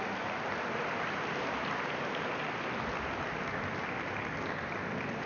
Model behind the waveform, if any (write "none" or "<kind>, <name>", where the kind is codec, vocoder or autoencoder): none